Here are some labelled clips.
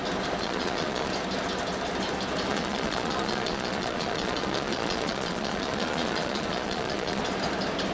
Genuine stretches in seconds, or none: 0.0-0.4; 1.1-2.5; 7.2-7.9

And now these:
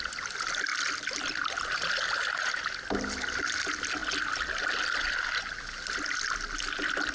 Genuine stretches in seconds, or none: 0.0-7.1

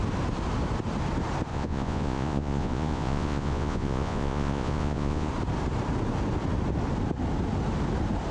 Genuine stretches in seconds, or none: 0.0-1.5; 5.3-8.3